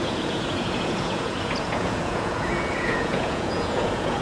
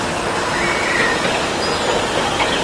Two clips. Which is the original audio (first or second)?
second